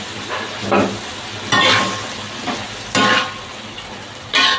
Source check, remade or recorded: recorded